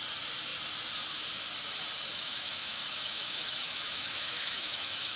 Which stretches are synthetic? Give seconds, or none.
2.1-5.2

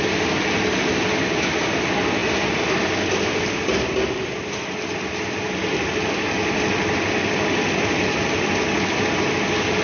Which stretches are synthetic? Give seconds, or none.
none

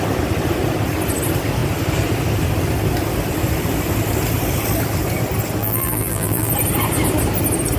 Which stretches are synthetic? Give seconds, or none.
5.6-6.5

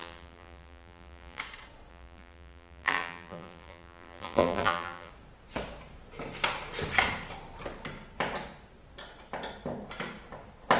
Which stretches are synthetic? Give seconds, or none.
0.0-1.4; 1.9-5.1

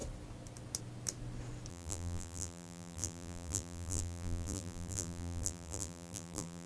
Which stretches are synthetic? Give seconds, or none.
1.7-6.7

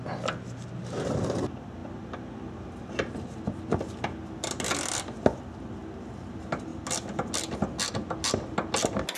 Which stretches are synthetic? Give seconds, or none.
none